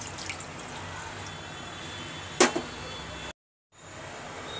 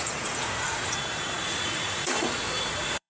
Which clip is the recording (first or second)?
first